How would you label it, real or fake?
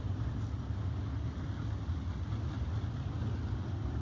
real